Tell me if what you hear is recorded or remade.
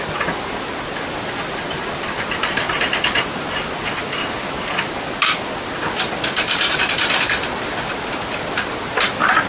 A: recorded